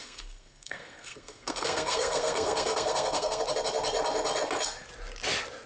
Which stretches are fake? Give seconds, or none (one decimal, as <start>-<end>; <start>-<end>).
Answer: 0.0-3.4